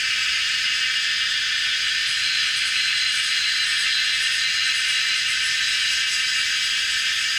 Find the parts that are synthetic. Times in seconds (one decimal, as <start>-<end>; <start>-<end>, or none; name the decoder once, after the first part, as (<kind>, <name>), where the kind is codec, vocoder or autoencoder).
none